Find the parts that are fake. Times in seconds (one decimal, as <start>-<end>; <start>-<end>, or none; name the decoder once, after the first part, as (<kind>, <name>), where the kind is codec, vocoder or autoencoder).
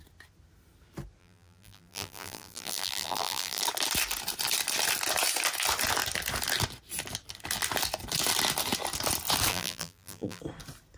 1.2-3.6 (vocoder, BigVGAN v2); 9.5-10.4